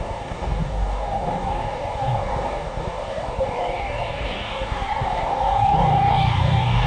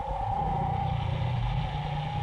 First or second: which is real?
second